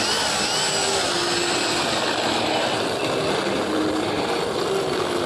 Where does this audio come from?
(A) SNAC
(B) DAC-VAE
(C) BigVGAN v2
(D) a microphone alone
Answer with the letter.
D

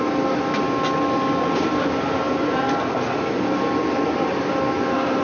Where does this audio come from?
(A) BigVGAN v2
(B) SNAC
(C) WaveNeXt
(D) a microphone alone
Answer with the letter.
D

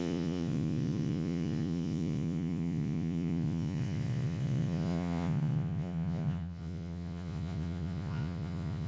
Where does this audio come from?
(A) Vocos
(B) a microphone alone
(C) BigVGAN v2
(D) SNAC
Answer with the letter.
A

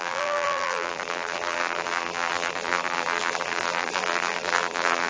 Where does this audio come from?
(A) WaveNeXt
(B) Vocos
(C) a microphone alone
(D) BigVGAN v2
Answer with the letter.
D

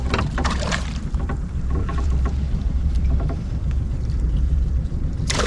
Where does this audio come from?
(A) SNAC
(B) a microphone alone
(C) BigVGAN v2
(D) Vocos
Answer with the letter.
C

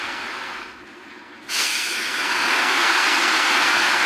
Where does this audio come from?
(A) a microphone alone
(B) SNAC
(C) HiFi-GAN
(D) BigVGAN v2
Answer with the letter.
B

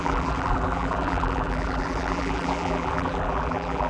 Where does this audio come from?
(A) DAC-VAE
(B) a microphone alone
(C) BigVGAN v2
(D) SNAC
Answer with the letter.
C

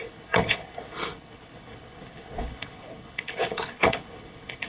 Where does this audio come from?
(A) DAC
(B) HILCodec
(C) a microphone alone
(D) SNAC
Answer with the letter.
B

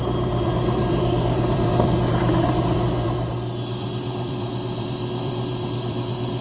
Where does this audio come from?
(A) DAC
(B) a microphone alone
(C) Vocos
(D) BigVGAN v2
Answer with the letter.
D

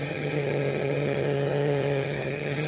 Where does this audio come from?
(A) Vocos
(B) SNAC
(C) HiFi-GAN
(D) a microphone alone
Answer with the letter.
C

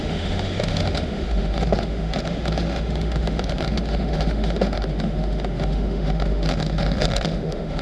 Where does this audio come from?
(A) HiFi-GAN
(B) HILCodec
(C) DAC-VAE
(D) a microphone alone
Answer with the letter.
C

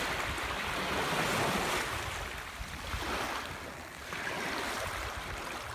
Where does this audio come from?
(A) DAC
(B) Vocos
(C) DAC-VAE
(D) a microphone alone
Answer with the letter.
D